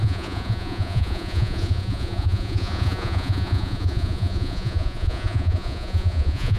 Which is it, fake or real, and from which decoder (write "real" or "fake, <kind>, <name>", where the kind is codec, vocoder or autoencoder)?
fake, vocoder, Vocos